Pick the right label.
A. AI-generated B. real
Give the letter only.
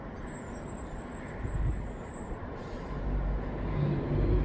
B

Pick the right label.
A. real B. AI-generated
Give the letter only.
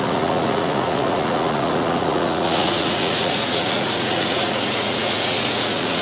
B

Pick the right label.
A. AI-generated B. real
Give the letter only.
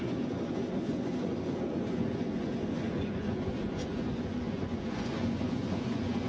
A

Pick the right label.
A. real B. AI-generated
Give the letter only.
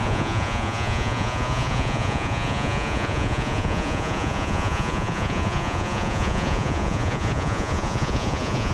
B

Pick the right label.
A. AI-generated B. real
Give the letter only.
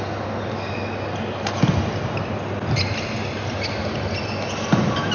B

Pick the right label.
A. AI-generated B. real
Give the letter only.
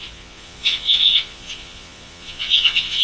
A